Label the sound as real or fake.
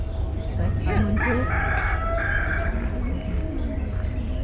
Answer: real